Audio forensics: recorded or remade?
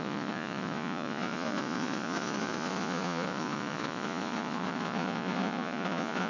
remade